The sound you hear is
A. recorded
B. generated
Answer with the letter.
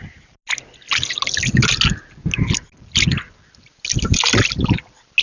A